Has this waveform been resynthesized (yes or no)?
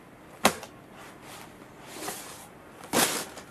yes